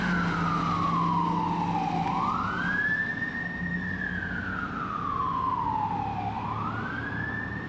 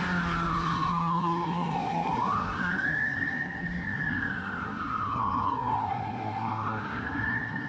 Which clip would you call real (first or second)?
first